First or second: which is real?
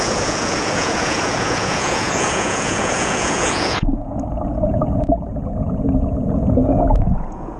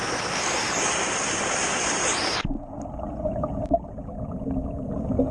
second